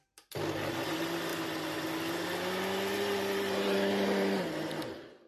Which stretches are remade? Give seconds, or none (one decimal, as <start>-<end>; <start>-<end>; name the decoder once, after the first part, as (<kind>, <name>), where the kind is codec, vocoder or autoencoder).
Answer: none